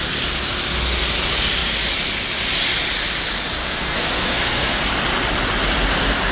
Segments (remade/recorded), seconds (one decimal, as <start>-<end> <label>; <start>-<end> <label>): 0.0-3.6 recorded; 3.6-4.8 remade; 4.8-6.3 recorded